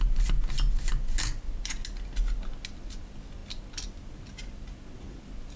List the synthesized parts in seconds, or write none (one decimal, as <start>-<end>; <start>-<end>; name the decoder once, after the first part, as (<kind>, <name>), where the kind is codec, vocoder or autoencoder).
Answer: none